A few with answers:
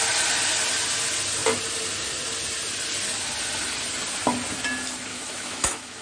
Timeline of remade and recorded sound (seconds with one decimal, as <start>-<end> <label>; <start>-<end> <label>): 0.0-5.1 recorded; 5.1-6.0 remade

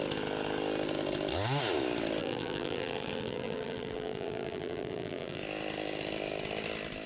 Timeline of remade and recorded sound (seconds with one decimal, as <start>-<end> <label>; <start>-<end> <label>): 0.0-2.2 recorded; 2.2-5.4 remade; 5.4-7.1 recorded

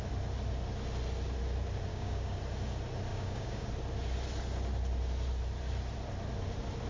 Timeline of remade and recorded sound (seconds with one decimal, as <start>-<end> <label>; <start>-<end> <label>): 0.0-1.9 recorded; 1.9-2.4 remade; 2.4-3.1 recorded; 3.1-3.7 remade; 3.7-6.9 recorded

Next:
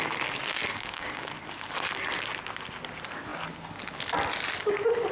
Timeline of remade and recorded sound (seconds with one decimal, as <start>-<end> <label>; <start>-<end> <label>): 0.0-0.5 recorded; 0.5-1.3 remade; 1.3-5.1 recorded

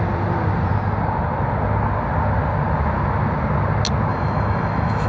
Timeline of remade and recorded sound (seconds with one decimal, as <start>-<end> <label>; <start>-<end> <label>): 0.0-4.1 recorded; 4.1-5.1 remade

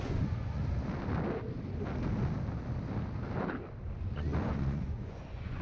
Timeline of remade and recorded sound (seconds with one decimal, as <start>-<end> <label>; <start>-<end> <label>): 0.0-0.6 remade; 0.6-4.0 recorded; 4.0-5.6 remade

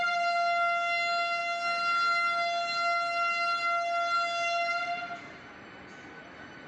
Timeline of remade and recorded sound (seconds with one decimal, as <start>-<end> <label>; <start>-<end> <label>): 0.0-6.7 recorded